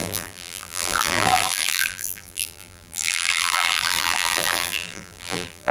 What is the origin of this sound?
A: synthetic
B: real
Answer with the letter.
A